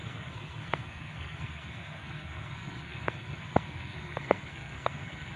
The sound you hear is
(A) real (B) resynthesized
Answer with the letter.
B